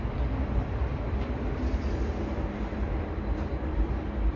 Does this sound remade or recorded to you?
remade